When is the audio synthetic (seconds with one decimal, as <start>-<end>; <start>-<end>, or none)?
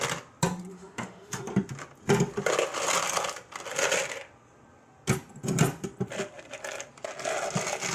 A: 0.7-1.4